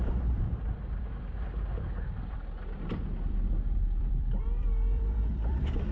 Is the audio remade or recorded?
remade